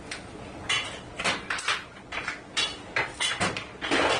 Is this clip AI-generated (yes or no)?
no